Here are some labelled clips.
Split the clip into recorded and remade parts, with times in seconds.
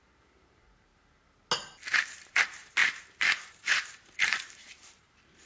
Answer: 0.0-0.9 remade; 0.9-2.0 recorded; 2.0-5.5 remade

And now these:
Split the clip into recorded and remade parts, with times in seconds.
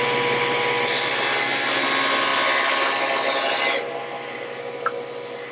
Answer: 0.0-5.5 recorded